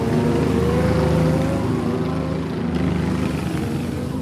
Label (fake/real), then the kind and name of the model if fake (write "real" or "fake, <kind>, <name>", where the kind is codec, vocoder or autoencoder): real